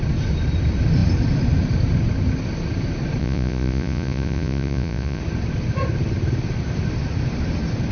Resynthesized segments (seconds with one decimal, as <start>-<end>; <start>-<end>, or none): 3.2-5.2